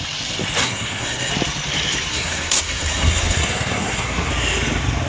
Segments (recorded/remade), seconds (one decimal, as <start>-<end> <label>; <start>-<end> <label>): 0.0-0.6 recorded; 0.6-1.3 remade; 1.3-2.1 recorded; 2.1-4.3 remade; 4.3-5.1 recorded